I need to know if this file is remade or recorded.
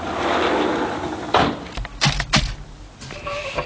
recorded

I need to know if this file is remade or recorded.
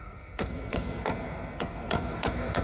remade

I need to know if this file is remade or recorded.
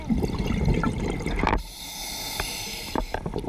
recorded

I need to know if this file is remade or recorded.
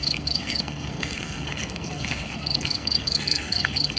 remade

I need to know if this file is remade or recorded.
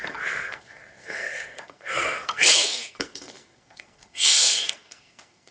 remade